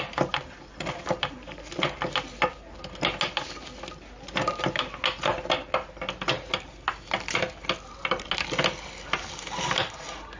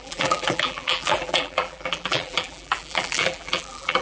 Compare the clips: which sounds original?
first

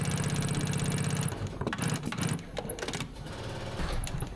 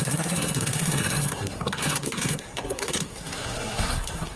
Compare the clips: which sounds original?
first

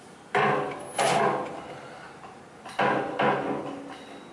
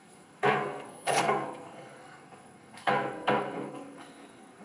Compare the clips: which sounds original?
first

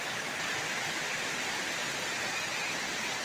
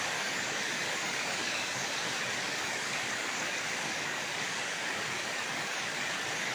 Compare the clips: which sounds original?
first